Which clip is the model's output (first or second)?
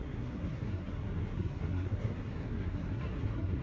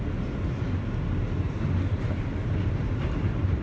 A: first